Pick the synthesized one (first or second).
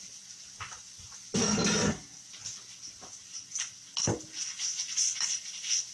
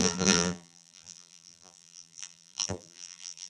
second